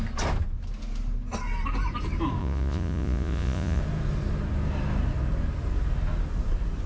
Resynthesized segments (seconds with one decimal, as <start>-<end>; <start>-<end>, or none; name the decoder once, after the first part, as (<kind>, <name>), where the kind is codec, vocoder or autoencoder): 2.4-3.8 (vocoder, Vocos)